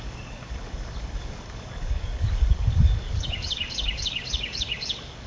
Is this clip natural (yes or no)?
no